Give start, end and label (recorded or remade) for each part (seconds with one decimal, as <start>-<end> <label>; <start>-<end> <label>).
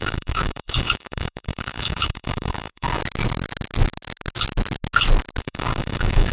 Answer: 0.0-3.0 remade; 3.0-5.4 recorded; 5.4-6.3 remade